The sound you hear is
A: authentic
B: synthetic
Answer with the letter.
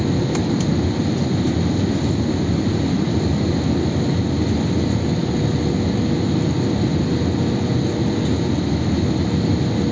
A